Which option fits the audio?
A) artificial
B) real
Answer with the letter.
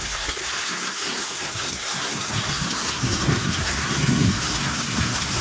A